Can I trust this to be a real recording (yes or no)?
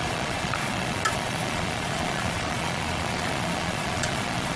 no